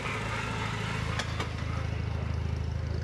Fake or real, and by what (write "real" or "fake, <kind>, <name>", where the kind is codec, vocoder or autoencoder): real